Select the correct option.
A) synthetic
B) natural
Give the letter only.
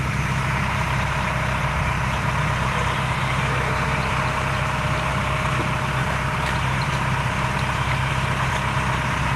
A